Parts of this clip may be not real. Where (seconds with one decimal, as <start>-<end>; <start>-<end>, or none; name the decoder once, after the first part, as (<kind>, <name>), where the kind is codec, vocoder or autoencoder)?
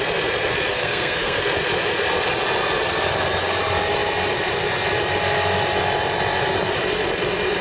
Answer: 0.7-1.4 (codec, SNAC)